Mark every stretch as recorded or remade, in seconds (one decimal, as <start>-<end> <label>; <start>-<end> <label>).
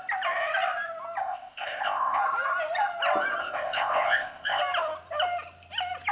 0.0-1.2 recorded; 1.2-2.2 remade; 2.2-3.4 recorded; 3.4-4.6 remade; 4.6-6.1 recorded